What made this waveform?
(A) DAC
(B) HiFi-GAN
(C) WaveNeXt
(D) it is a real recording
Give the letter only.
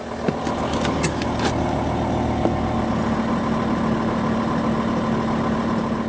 D